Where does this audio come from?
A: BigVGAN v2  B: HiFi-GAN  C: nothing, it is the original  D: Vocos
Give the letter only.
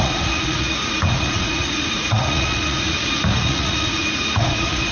D